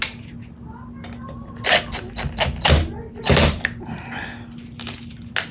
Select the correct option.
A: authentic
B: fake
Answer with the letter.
A